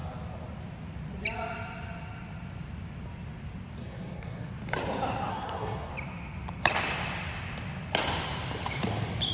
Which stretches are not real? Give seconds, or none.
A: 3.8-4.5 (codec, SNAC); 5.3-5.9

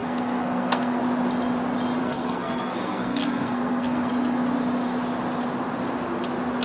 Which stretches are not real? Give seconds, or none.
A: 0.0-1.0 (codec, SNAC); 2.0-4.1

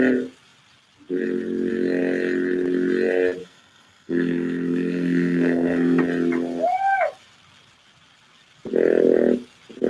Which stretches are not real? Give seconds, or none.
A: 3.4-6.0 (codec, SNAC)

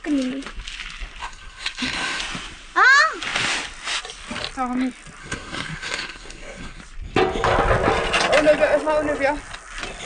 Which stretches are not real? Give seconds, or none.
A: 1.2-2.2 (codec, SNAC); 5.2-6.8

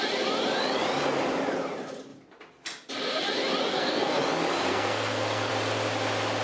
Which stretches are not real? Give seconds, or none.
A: 3.7-4.2 (codec, SNAC); 4.7-5.5